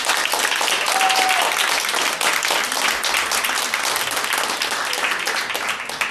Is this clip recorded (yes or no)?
yes